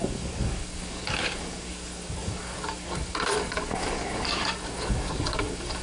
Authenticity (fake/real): fake